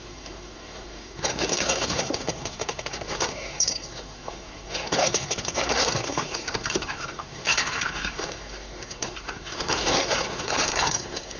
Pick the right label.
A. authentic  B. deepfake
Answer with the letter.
B